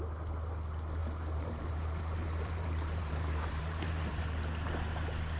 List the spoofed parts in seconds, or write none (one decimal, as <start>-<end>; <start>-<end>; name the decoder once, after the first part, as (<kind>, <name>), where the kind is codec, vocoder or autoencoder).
1.0-4.2 (vocoder, BigVGAN v2)